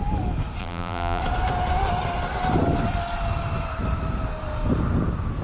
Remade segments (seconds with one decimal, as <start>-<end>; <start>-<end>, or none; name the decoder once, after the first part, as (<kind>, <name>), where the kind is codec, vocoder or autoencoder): 0.6-1.2 (vocoder, BigVGAN v2)